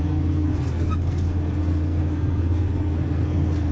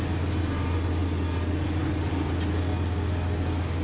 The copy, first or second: first